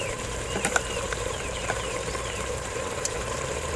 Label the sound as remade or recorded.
remade